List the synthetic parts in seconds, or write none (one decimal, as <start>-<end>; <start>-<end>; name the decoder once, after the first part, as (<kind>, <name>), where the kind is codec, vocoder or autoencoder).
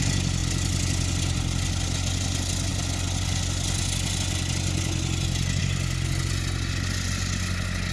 none